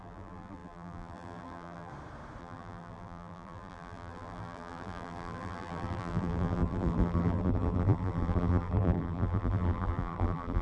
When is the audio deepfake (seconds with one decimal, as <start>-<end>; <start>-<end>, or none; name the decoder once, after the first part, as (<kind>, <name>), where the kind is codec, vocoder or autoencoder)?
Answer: 0.0-1.9 (vocoder, BigVGAN v2); 2.4-10.6